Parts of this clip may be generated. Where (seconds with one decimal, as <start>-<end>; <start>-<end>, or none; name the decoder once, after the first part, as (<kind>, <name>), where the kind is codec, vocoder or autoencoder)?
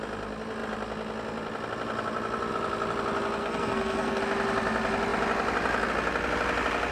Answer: 3.4-4.2 (codec, SNAC)